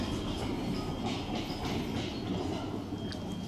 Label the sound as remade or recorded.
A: recorded